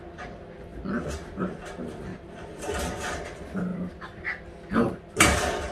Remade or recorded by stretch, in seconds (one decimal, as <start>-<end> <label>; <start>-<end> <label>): 0.0-2.1 recorded; 2.1-2.9 remade; 2.9-5.7 recorded

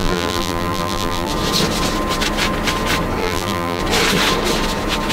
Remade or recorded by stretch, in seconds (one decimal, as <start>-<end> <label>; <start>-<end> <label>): 0.0-1.3 remade; 1.3-3.2 recorded; 3.2-3.8 remade; 3.8-5.1 recorded

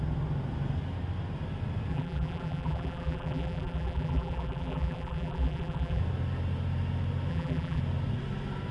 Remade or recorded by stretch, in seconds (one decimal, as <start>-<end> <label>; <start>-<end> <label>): 0.0-1.9 recorded; 1.9-6.0 remade; 6.0-7.3 recorded; 7.3-7.8 remade; 7.8-8.7 recorded

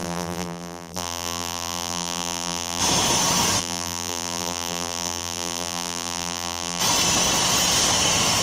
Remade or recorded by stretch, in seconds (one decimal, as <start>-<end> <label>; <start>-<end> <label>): 0.0-2.8 remade; 2.8-3.6 recorded; 3.6-6.8 remade; 6.8-8.4 recorded

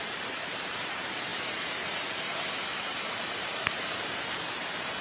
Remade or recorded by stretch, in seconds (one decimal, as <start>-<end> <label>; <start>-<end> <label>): 0.0-5.0 remade

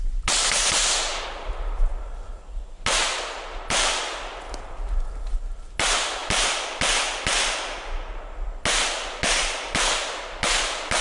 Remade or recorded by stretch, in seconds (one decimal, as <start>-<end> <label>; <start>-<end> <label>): 0.0-3.5 recorded; 3.5-4.4 remade; 4.4-11.0 recorded